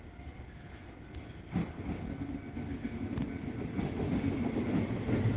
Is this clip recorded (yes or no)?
yes